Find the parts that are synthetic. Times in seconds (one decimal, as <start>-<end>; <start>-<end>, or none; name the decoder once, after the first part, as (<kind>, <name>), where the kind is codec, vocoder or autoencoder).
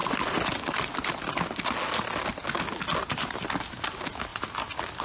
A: none